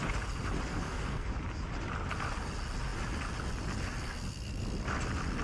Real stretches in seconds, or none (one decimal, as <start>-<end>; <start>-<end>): 0.0-0.7; 1.3-5.4